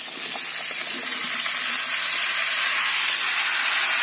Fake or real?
real